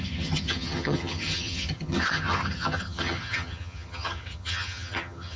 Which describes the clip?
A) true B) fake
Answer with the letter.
B